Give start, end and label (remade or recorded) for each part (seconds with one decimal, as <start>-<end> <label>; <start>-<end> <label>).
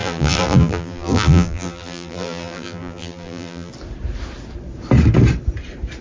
0.0-3.7 remade; 3.7-6.0 recorded